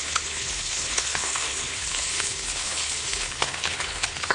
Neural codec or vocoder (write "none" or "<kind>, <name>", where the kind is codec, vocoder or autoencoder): codec, HILCodec